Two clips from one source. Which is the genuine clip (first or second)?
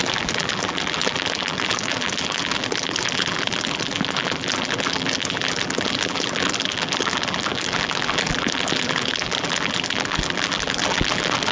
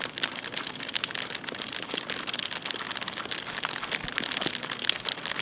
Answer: second